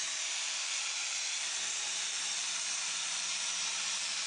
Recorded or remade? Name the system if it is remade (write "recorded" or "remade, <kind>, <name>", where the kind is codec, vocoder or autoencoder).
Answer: remade, vocoder, BigVGAN v2